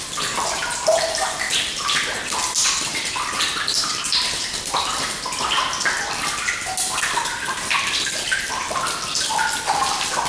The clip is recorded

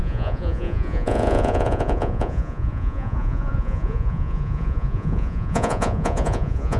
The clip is remade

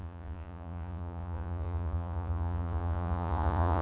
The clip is remade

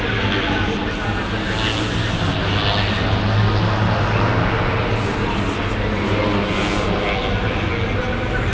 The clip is recorded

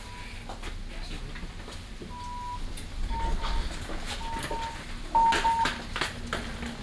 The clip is recorded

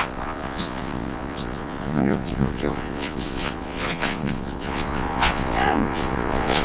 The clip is remade